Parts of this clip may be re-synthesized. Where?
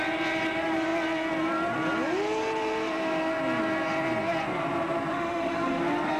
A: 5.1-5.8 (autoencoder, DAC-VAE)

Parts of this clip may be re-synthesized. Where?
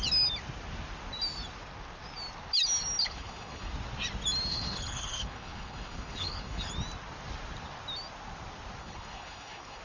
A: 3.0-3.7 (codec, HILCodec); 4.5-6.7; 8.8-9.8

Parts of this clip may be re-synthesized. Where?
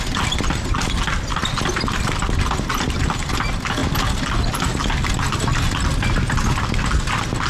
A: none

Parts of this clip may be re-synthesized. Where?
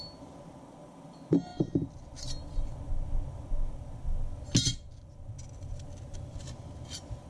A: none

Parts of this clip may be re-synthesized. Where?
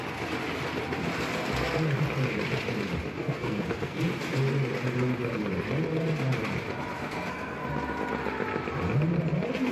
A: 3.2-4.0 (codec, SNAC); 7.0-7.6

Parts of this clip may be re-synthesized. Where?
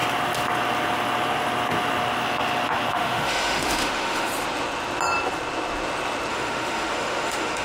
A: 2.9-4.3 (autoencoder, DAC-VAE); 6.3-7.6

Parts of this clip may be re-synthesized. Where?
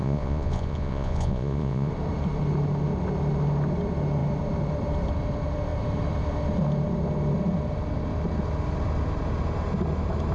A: 0.0-1.9 (vocoder, Vocos)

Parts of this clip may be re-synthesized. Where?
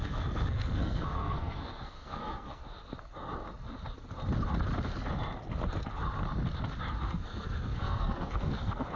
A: 0.0-2.6 (codec, SNAC); 7.0-9.0